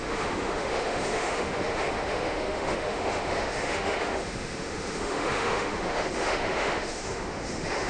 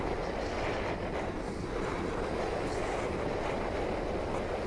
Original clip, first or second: second